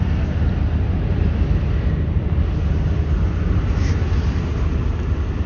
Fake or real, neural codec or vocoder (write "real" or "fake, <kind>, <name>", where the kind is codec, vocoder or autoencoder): real